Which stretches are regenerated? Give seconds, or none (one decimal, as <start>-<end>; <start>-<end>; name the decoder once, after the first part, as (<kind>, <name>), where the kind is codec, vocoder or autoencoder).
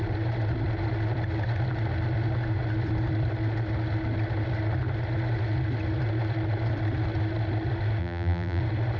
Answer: 8.0-8.6 (vocoder, BigVGAN v2)